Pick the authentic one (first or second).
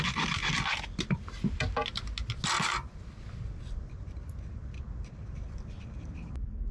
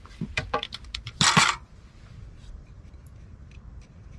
first